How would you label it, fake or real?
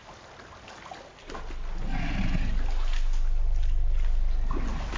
real